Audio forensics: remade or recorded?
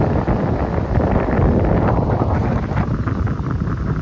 recorded